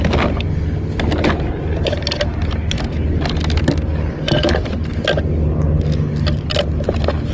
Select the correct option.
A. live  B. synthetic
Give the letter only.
A